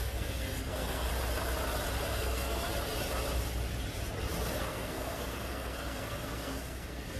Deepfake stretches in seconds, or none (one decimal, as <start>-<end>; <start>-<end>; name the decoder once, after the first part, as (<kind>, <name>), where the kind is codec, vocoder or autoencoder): 0.0-1.1 (codec, SNAC); 2.1-2.7; 4.6-7.2